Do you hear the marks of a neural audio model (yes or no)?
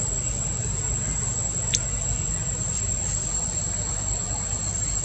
no